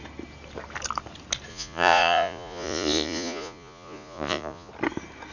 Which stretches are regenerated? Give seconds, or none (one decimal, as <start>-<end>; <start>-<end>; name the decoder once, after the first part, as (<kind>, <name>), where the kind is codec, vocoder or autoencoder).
1.5-4.7 (vocoder, Vocos)